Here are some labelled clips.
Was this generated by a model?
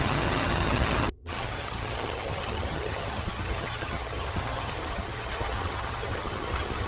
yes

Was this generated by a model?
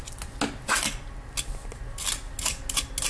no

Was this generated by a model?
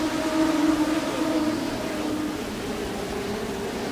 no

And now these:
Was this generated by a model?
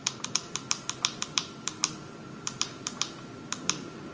no